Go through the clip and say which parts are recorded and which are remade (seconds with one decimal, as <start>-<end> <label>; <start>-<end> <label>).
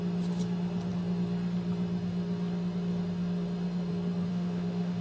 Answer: 0.0-4.3 recorded; 4.3-5.0 remade